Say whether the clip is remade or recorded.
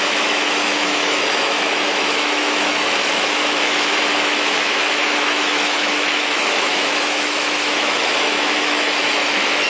remade